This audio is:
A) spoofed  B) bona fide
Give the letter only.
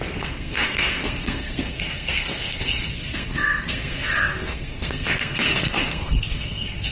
A